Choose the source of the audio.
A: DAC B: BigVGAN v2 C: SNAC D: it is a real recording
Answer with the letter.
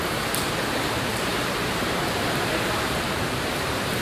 B